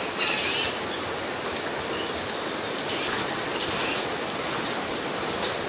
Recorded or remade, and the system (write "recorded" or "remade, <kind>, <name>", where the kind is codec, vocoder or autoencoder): recorded